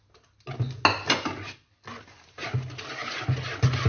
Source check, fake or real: real